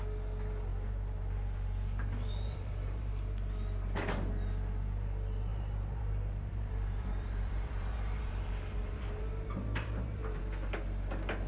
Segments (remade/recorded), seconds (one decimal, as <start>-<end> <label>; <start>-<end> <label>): 0.0-0.7 recorded; 0.7-3.1 remade; 3.1-5.5 recorded; 5.5-10.4 remade; 10.4-11.5 recorded